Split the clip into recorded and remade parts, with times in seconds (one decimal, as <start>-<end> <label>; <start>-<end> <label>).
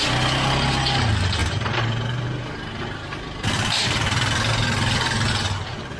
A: 0.0-1.4 recorded; 1.4-3.9 remade; 3.9-6.0 recorded